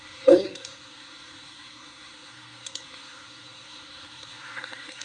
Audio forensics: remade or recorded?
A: remade